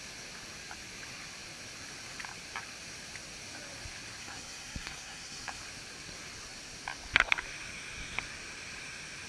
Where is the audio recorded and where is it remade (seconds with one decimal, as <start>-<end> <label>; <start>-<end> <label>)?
0.0-4.2 recorded; 4.2-5.6 remade; 5.6-9.3 recorded